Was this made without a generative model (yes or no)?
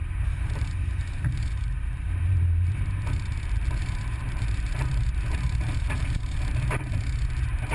no